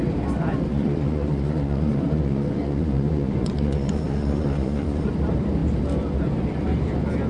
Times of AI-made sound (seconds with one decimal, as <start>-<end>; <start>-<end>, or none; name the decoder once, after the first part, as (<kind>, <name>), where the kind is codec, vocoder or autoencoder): 0.7-5.1 (vocoder, Vocos)